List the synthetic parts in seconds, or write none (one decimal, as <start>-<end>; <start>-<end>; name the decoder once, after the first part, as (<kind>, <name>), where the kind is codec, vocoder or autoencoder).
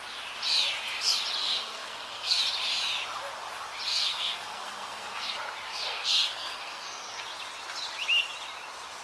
1.4-2.4 (codec, SNAC); 3.9-5.3; 5.7-7.2